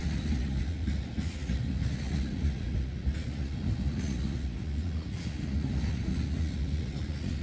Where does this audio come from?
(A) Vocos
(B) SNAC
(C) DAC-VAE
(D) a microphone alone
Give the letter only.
A